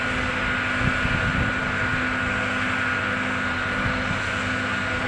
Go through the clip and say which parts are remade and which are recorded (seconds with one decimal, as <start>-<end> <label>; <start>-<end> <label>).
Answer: 0.0-5.1 recorded